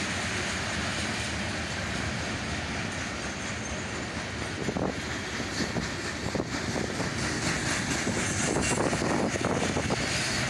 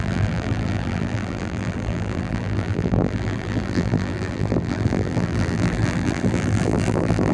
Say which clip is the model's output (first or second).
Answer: second